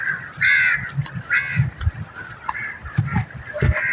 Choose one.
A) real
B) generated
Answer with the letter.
A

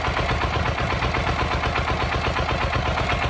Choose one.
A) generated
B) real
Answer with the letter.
B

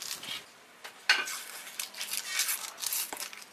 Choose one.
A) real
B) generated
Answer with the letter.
A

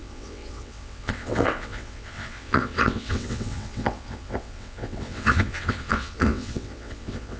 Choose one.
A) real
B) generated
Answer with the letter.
B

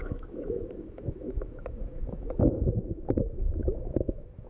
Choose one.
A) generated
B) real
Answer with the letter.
A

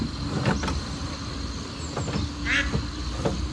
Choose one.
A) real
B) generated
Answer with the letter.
A